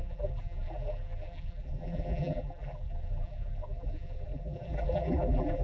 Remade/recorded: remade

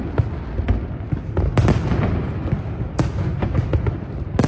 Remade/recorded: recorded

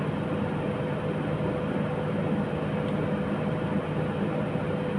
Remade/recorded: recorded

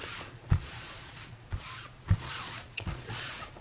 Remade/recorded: remade